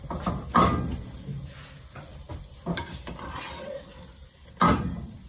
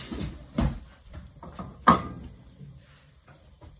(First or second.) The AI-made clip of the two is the second